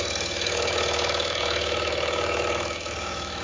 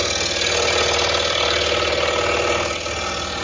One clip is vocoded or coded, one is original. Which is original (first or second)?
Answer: second